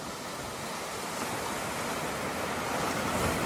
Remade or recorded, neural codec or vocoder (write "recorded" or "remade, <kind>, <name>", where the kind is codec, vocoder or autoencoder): recorded